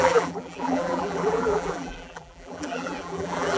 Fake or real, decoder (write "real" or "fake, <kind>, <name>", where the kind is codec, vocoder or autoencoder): fake, vocoder, BigVGAN v2